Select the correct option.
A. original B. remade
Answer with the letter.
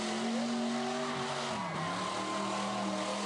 A